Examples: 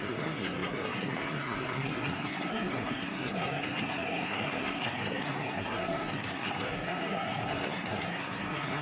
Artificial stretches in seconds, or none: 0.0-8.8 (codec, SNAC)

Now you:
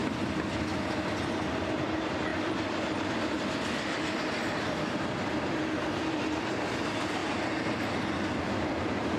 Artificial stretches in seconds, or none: 1.8-7.2 (vocoder, BigVGAN v2); 8.4-9.2

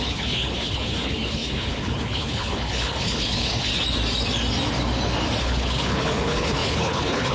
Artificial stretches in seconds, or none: 0.0-3.7 (codec, HILCodec); 5.4-7.3

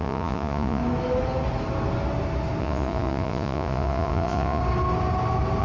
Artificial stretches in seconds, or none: 0.0-0.8 (vocoder, Vocos); 2.6-4.6

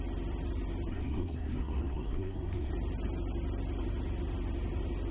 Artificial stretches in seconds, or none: 0.9-2.7 (codec, SNAC)